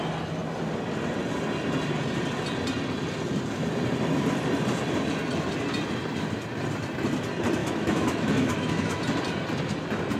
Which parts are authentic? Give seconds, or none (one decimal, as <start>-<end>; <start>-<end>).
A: 0.0-7.6; 9.0-10.2